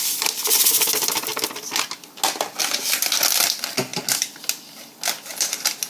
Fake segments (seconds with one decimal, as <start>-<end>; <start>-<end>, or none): none